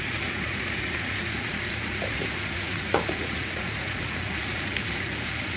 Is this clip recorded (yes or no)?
no